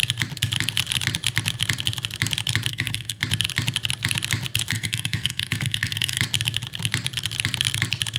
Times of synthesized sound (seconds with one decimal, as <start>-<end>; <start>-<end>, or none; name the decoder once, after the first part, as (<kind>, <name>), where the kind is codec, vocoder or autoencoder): 2.7-3.2 (codec, SNAC); 4.7-6.2